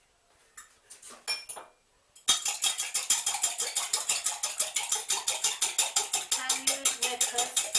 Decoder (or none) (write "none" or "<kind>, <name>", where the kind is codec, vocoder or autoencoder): none